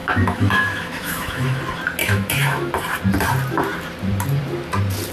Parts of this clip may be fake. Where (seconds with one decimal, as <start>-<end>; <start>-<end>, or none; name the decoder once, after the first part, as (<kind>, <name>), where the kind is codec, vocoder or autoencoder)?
0.0-1.6 (autoencoder, DAC-VAE); 2.0-2.7